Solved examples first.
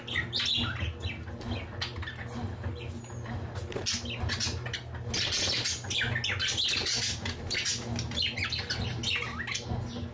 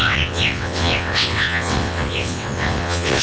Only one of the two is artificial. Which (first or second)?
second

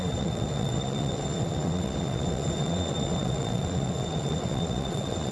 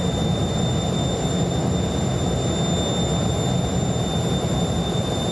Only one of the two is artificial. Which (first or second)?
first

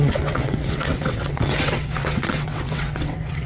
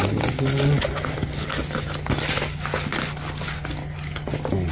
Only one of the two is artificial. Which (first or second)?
first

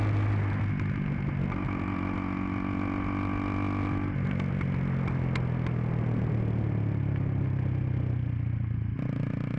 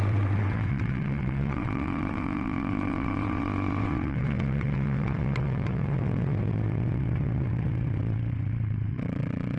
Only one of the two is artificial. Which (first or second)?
second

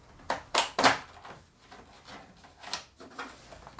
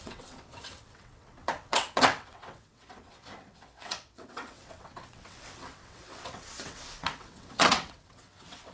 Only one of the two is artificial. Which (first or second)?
second